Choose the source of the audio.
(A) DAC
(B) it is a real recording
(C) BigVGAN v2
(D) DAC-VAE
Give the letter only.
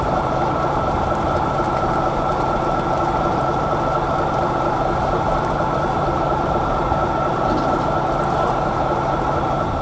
C